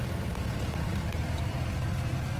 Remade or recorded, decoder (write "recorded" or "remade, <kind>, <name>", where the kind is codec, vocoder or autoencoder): remade, vocoder, BigVGAN v2